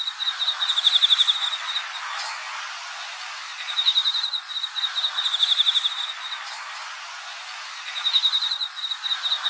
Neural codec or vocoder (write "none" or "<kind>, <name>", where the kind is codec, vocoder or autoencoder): none